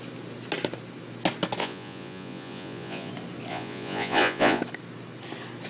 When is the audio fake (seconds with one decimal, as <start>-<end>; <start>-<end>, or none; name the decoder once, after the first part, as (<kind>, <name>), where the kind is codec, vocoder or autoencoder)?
1.6-3.1 (vocoder, Vocos); 3.5-4.6

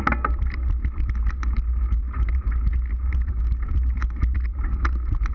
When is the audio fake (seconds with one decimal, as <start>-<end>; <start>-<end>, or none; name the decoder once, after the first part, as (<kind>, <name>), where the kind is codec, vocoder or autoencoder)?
2.0-2.7 (vocoder, BigVGAN v2)

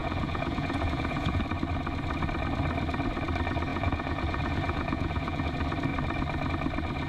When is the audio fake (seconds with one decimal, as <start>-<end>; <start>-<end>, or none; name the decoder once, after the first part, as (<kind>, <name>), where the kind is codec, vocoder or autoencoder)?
0.0-1.4 (vocoder, Vocos); 3.7-5.5

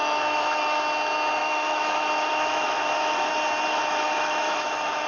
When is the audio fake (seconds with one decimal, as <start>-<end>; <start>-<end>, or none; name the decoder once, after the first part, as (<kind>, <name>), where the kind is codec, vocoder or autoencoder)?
0.0-0.8 (autoencoder, DAC-VAE); 1.4-3.3; 3.7-5.1

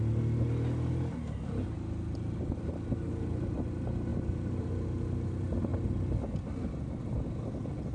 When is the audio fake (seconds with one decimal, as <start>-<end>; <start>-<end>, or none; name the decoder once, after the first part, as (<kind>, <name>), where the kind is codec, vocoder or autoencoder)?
4.1-4.7 (vocoder, BigVGAN v2)